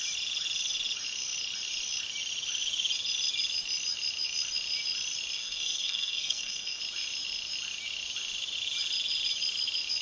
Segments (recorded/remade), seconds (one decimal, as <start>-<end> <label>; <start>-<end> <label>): 0.0-5.4 recorded; 5.4-6.8 remade; 6.8-10.0 recorded